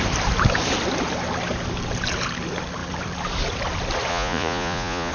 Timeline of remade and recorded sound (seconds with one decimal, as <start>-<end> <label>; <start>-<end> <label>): 0.0-4.1 recorded; 4.1-5.1 remade